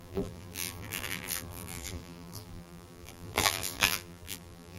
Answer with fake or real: fake